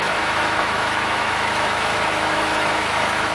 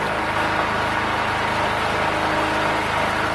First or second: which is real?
second